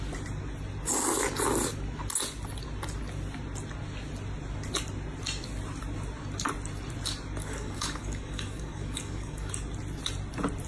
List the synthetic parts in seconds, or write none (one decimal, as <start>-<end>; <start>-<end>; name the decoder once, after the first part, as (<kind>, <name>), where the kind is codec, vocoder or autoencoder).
7.4-9.5 (codec, DAC)